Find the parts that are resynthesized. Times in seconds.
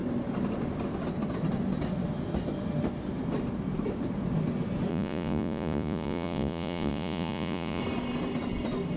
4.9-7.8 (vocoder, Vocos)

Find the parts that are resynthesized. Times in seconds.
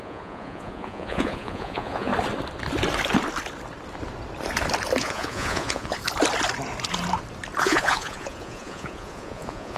0.0-2.1 (vocoder, Vocos); 5.0-6.0; 7.6-9.8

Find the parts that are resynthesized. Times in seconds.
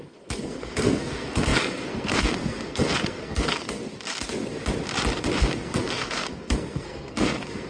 0.0-3.8 (codec, SNAC); 5.4-7.7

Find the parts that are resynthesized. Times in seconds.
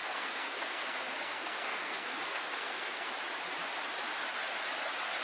0.0-3.1 (codec, SNAC)